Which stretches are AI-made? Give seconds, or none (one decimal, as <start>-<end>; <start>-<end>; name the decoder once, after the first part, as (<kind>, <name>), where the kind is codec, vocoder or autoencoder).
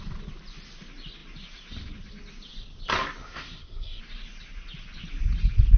3.2-4.0 (codec, SNAC)